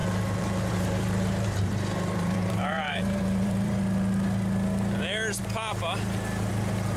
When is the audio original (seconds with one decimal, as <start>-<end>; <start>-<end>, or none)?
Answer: 3.8-7.0